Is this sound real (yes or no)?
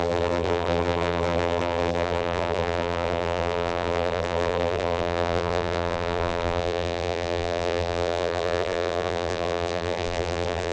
no